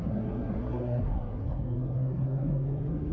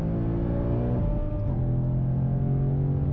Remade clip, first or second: first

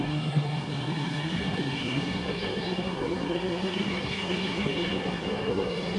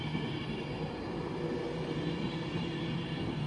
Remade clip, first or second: first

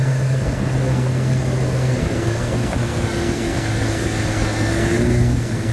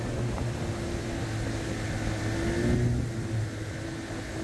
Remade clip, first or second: first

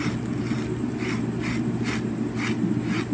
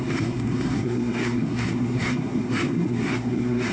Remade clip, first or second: second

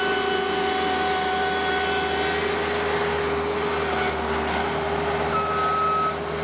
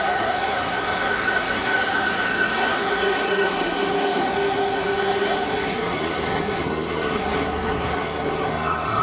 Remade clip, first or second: second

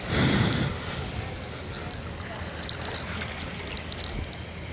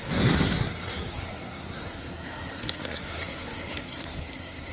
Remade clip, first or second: second